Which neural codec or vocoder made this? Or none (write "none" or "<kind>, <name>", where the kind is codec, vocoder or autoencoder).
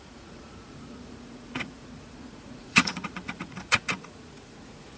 vocoder, Vocos